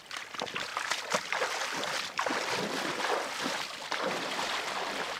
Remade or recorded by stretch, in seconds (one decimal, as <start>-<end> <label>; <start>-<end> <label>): 0.0-5.2 recorded